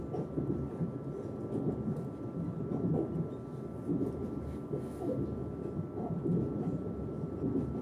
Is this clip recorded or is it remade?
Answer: remade